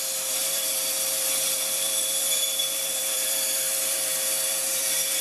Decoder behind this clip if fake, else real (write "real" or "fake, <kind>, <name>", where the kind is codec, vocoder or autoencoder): fake, vocoder, BigVGAN v2